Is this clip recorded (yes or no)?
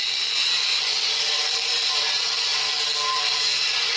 no